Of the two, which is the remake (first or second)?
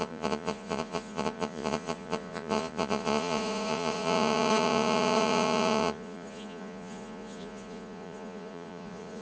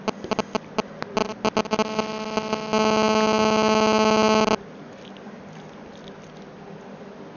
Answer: first